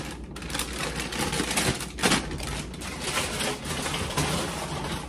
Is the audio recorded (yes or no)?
yes